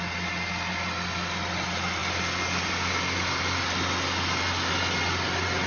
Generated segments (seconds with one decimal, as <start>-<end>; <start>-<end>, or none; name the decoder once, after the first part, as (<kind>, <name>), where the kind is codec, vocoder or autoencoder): none